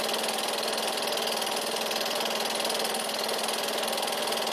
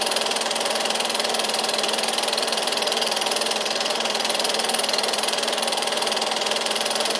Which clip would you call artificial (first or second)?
second